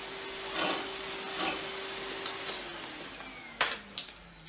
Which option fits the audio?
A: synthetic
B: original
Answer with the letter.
B